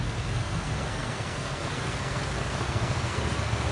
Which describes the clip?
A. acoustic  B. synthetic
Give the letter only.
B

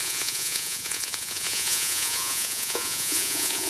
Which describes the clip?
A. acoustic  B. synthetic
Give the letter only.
B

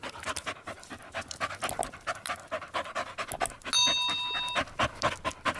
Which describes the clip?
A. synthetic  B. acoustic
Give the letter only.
B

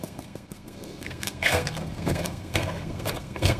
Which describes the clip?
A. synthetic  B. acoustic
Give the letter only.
A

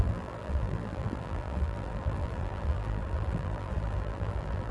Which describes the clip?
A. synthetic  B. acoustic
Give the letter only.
A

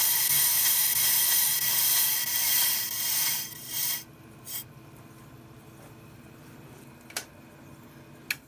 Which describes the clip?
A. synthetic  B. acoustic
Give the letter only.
B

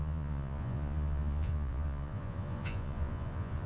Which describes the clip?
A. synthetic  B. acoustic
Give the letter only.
A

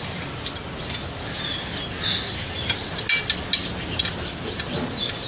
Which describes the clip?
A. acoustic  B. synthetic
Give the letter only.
A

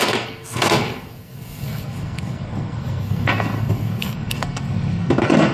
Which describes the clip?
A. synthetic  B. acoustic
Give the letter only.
A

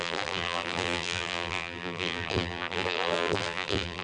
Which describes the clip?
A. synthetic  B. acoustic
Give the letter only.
A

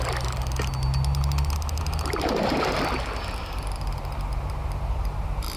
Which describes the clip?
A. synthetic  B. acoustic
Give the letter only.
B